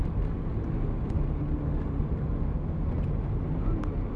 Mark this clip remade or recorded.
recorded